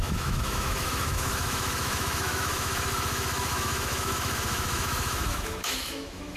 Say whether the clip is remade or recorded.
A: remade